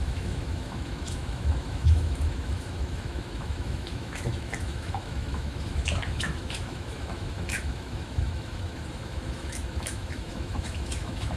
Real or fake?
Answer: fake